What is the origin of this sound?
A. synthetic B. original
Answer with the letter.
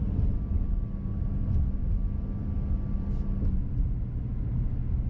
B